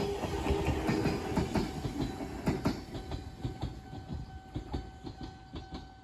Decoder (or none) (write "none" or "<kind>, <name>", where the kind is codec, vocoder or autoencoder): none